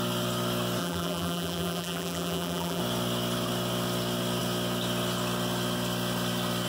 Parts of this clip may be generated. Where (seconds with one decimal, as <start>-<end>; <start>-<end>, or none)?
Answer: 0.8-2.8